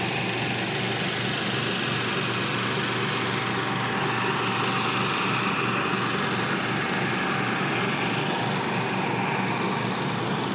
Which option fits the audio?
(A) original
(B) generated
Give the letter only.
A